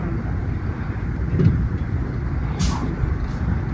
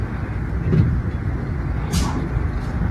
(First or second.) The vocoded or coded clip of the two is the first